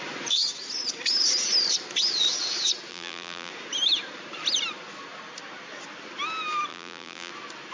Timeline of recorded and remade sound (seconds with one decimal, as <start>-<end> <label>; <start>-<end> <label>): 0.0-2.9 recorded; 2.9-3.5 remade; 3.5-6.7 recorded; 6.7-7.3 remade; 7.3-7.7 recorded